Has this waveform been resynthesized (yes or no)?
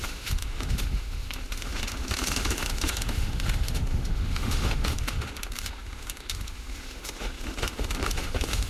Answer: yes